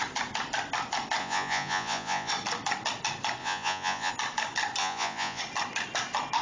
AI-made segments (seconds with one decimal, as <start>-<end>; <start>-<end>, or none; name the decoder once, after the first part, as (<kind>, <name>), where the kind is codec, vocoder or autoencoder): 1.2-2.3 (vocoder, Vocos); 3.4-4.1; 4.8-5.4